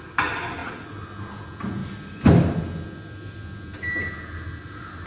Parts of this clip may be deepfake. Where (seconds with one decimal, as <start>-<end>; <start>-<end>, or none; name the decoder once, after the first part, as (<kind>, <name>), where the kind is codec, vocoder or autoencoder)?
none

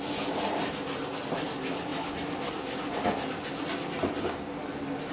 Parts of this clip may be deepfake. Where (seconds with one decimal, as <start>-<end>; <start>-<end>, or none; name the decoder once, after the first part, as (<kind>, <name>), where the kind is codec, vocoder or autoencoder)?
none

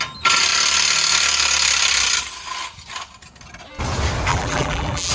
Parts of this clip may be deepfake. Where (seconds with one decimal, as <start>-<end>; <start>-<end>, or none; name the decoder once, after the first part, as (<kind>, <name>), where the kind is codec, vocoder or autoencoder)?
4.3-5.1 (vocoder, BigVGAN v2)